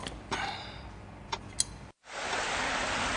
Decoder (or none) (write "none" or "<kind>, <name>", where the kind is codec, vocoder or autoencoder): none